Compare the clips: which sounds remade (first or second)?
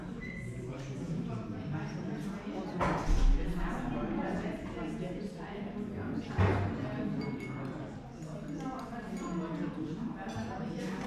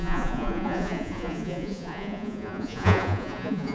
second